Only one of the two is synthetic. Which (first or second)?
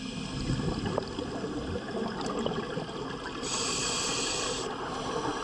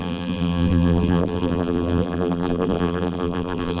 second